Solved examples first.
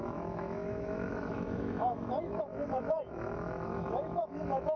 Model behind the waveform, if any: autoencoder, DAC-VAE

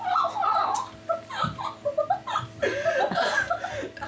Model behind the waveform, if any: none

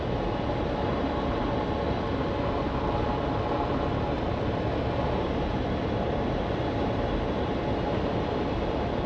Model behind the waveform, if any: none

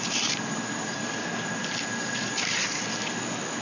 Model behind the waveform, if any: none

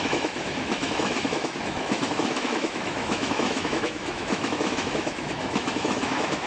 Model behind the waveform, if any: autoencoder, DAC-VAE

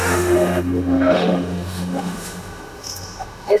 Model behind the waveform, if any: autoencoder, DAC-VAE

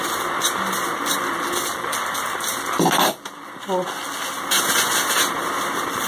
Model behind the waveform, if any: none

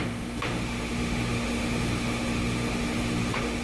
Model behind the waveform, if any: autoencoder, DAC-VAE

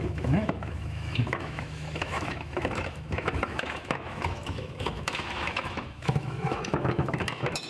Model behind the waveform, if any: autoencoder, DAC-VAE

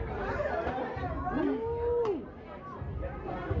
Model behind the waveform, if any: none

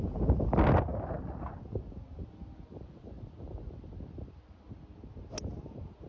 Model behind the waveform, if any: none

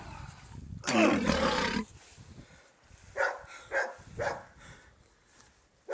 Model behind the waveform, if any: none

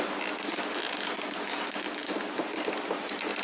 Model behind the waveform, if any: none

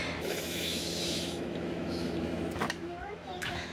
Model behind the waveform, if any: autoencoder, DAC-VAE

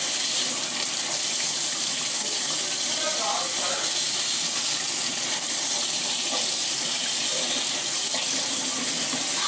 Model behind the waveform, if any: none